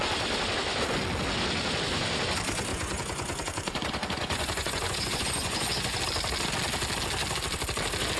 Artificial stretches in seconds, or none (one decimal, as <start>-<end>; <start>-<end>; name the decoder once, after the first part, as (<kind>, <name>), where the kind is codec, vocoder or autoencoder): 2.7-6.0 (vocoder, Vocos)